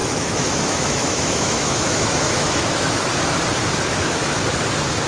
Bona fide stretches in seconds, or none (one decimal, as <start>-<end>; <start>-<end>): 3.1-3.9; 4.4-5.1

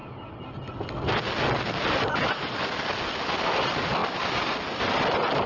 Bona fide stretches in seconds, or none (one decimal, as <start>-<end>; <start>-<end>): 0.0-5.5